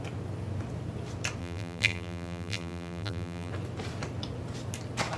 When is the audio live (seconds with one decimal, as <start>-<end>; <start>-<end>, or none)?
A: 0.0-1.4; 3.5-5.2